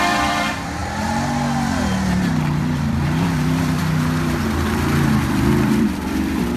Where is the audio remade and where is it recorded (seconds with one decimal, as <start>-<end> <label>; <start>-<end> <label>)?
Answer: 0.0-0.8 remade; 0.8-2.6 recorded; 2.6-3.8 remade; 3.8-5.1 recorded; 5.1-6.6 remade